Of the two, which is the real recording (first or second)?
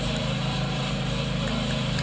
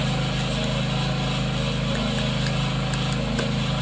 second